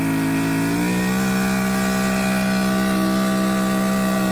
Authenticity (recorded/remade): recorded